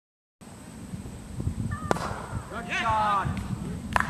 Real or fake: real